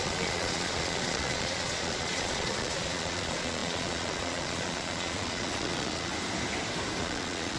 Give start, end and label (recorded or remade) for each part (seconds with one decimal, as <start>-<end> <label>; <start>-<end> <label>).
0.0-6.1 remade; 6.1-7.0 recorded; 7.0-7.6 remade